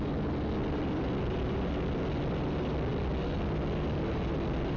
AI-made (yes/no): no